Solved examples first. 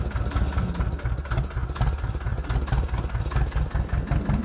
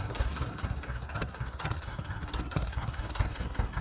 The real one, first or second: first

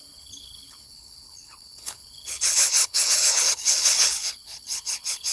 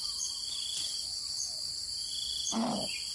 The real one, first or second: second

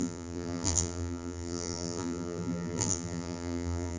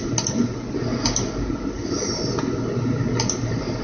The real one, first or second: second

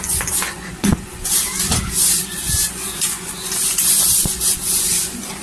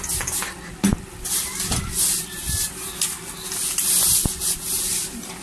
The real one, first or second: second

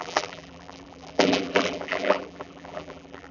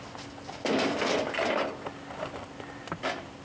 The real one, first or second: second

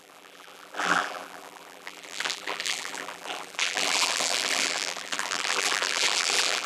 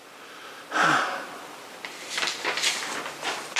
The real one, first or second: second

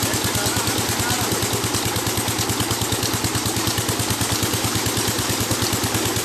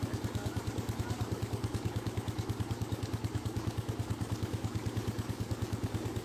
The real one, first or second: first